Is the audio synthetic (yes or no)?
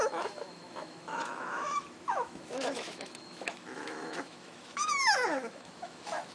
yes